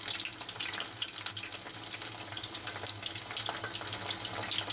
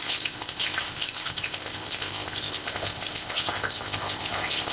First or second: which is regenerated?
second